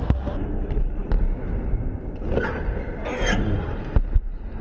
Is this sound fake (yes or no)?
no